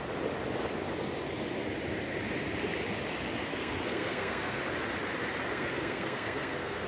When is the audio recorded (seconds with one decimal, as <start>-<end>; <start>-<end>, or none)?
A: 0.0-3.5; 4.6-5.5